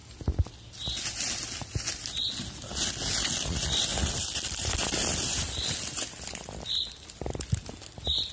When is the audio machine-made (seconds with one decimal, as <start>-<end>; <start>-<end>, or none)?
3.9-7.2